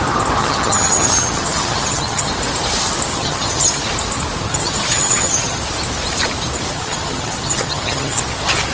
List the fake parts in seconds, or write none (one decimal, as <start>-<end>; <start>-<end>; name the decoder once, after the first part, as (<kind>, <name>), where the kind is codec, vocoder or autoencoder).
0.4-2.3 (vocoder, HiFi-GAN); 3.1-3.8; 4.5-5.6; 6.7-8.2